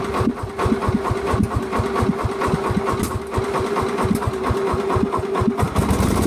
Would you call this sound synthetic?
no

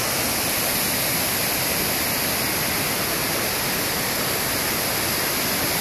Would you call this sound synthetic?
no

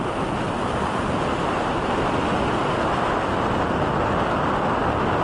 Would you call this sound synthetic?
no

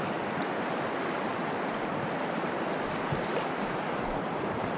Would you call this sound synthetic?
no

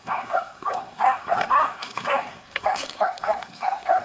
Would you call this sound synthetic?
yes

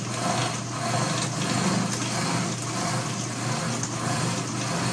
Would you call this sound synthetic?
no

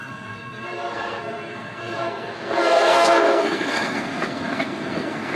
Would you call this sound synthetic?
yes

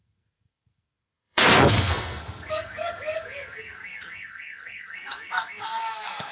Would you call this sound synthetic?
yes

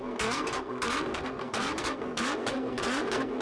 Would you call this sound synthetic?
yes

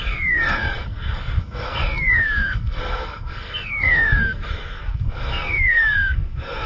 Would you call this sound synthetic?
yes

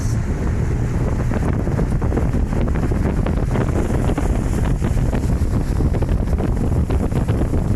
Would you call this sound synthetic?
no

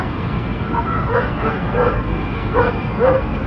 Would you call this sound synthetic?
yes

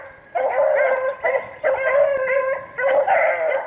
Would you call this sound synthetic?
no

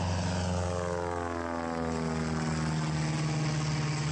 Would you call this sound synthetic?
no